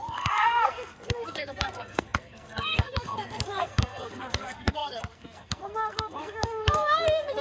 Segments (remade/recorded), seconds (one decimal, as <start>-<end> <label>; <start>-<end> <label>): 0.0-7.4 remade